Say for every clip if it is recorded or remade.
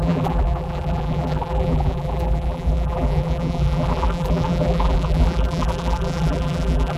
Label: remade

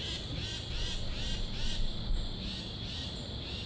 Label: recorded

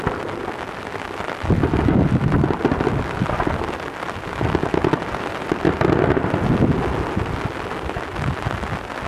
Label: recorded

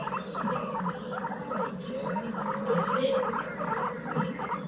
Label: recorded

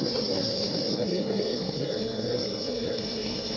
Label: remade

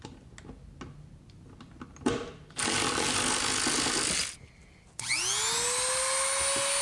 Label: recorded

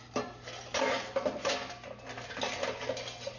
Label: recorded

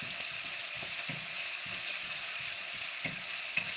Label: remade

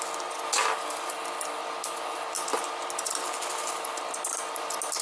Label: recorded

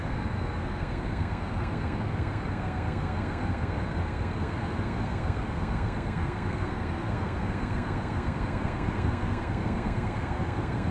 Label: remade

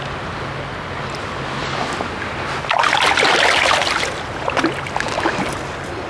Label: recorded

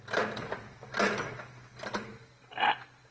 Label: recorded